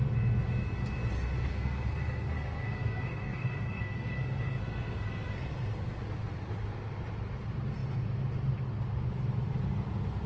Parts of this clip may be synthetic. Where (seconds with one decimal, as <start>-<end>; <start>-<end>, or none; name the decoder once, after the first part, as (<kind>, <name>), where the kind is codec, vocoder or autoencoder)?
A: 1.5-6.0 (codec, SNAC)